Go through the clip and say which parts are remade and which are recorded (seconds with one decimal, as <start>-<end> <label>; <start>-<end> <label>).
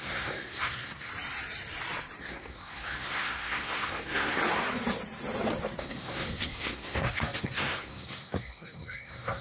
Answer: 0.0-1.1 remade; 1.1-2.2 recorded; 2.2-4.4 remade; 4.4-5.8 recorded; 5.8-9.4 remade